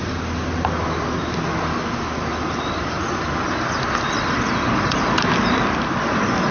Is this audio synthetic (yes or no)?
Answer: no